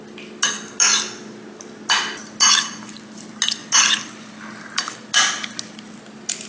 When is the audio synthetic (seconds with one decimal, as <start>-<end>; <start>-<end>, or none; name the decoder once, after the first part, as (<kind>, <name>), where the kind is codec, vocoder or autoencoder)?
none